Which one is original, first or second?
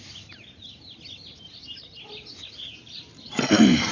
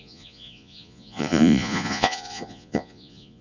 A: first